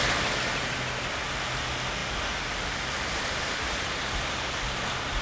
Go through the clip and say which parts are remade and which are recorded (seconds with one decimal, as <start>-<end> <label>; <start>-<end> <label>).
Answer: 0.0-5.2 recorded